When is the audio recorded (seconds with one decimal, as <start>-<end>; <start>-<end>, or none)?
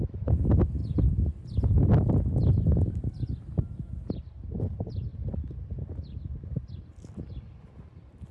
0.0-8.3